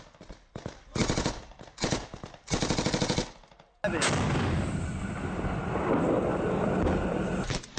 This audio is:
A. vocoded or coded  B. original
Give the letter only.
B